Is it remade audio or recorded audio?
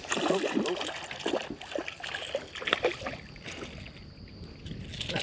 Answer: recorded